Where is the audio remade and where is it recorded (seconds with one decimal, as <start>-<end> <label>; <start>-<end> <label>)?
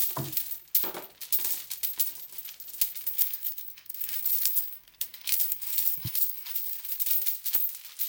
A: 0.0-3.1 recorded; 3.1-6.9 remade; 6.9-8.1 recorded